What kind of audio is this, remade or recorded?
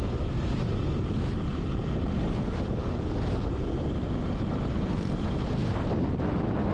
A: recorded